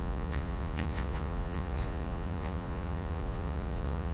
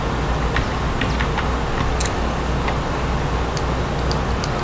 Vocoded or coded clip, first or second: first